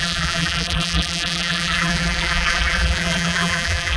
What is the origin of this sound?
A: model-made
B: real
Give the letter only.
A